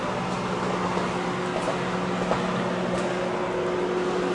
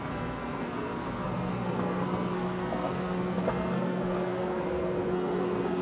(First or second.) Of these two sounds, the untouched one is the first